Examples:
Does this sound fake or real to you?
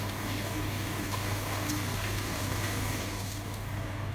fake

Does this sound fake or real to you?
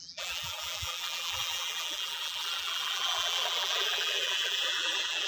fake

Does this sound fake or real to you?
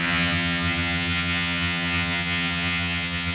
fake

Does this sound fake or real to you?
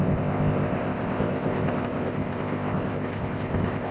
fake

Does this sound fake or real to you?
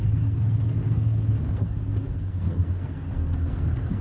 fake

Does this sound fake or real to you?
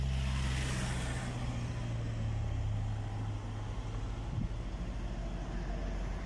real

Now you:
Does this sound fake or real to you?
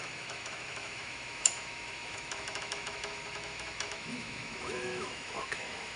fake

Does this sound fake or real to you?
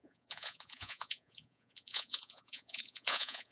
fake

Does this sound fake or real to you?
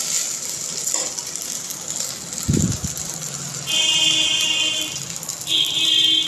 real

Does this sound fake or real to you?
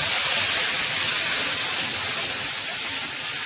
real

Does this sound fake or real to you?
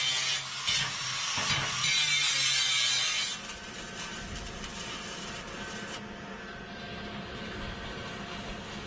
real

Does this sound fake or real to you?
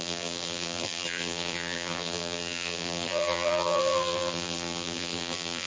fake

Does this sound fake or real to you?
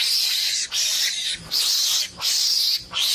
fake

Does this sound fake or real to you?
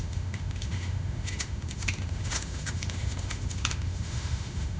fake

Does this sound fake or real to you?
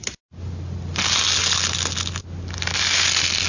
real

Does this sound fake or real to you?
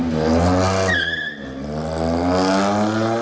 real